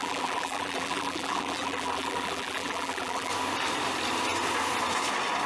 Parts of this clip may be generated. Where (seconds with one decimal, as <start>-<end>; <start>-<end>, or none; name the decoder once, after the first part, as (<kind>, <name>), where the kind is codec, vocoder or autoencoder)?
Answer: 0.0-3.3 (vocoder, BigVGAN v2)